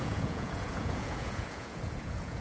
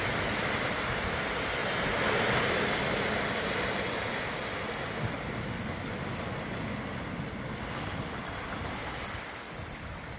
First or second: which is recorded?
second